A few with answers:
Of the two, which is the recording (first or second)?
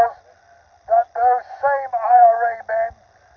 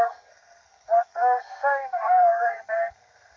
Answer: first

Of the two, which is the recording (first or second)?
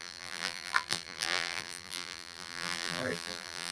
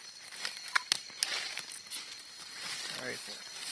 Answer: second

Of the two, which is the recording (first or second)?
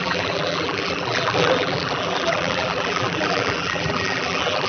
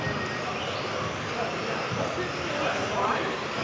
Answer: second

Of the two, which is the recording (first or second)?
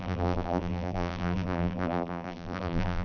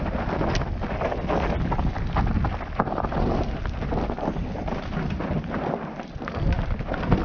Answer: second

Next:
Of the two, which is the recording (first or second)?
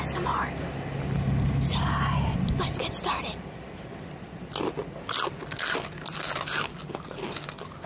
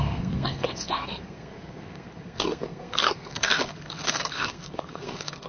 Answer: first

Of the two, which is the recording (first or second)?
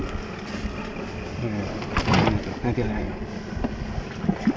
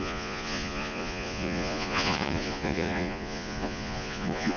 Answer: first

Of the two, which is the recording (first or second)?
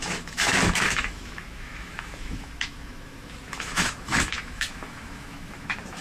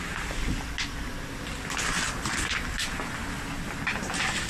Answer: second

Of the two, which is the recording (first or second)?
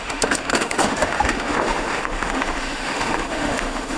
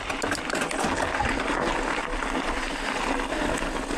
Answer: second